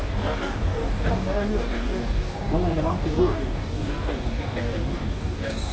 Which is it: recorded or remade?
remade